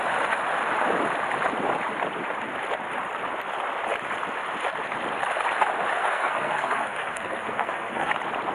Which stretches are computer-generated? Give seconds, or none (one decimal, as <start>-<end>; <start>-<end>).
6.0-8.1